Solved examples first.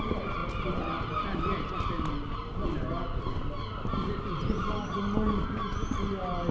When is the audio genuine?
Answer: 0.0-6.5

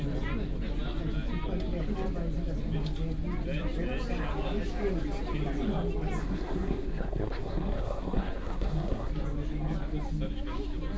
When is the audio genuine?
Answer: 0.0-6.2; 9.1-11.0

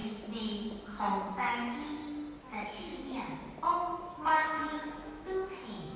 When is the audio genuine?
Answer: 0.0-1.3; 2.0-2.5; 2.9-4.0